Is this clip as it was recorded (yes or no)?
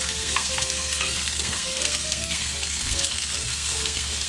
no